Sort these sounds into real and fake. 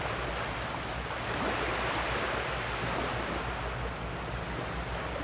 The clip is real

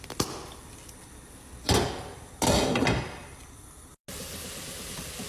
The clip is real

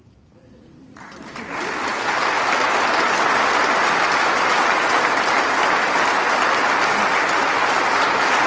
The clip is real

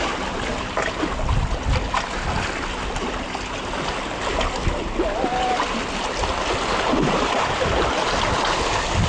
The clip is real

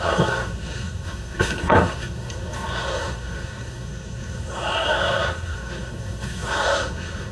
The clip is fake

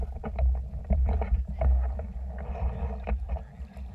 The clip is fake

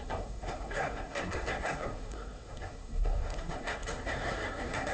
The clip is fake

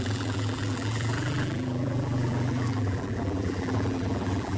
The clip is fake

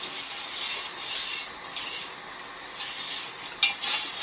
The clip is real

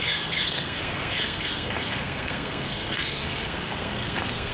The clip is fake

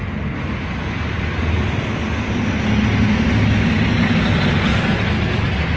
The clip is real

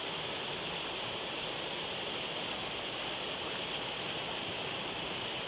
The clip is real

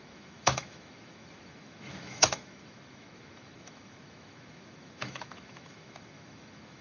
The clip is fake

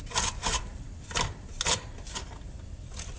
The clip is real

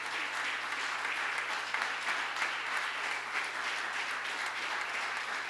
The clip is real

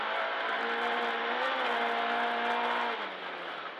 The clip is real